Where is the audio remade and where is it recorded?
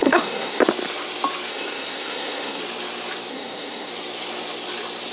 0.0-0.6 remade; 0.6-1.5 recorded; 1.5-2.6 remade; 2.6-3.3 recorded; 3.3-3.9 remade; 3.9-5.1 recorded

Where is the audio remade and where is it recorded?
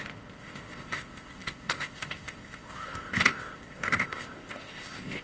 0.0-5.2 remade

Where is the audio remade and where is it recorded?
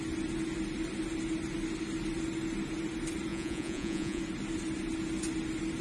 0.0-3.3 recorded; 3.3-4.2 remade; 4.2-5.8 recorded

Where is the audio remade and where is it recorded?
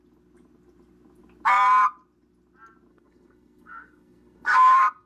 0.0-2.9 recorded; 2.9-5.1 remade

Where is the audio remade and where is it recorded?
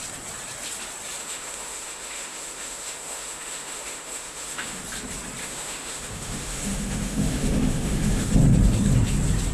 0.0-1.2 recorded; 1.2-4.8 remade; 4.8-5.4 recorded; 5.4-8.3 remade; 8.3-9.5 recorded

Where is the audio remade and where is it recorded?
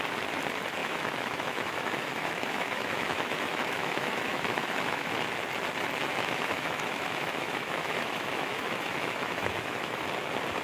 0.0-0.8 recorded; 0.8-5.1 remade; 5.1-6.0 recorded; 6.0-10.0 remade; 10.0-10.6 recorded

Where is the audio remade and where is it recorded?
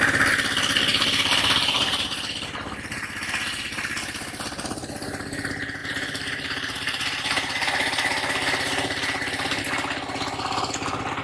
0.0-0.9 recorded; 0.9-2.5 remade; 2.5-5.8 recorded; 5.8-9.6 remade; 9.6-11.2 recorded